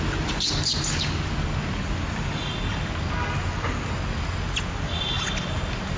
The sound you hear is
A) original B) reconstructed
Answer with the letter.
A